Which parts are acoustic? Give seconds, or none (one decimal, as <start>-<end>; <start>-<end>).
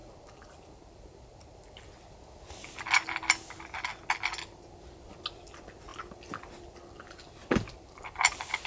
0.0-8.7